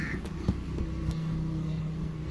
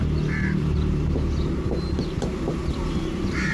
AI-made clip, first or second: first